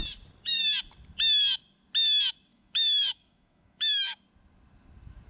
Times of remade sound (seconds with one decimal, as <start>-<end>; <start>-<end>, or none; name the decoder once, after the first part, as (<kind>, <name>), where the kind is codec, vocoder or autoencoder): 2.5-4.2 (autoencoder, DAC-VAE)